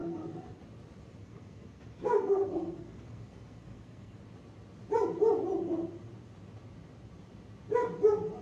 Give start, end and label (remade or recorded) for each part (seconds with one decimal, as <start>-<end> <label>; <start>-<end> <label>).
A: 0.0-0.6 remade; 0.6-1.2 recorded; 1.2-4.2 remade; 4.2-8.4 recorded